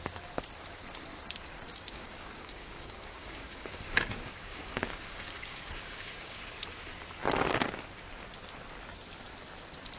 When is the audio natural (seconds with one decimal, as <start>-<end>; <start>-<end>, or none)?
0.0-1.7; 6.4-10.0